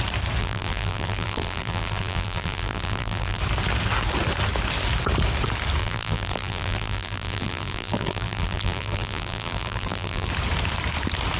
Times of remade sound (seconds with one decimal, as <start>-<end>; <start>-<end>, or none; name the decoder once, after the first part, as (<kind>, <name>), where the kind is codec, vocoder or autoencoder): 0.4-3.4 (vocoder, BigVGAN v2); 5.8-10.3